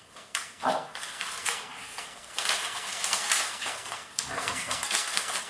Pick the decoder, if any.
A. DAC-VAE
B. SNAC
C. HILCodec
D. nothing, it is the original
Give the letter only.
B